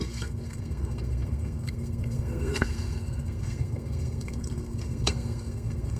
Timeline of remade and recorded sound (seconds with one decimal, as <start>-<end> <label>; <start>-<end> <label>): 0.0-6.0 remade